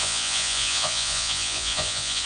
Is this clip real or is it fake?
fake